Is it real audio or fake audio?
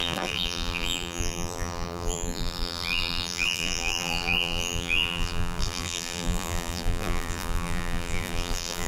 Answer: fake